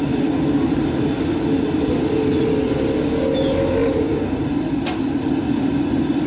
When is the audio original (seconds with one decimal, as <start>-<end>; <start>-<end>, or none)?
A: 0.0-6.3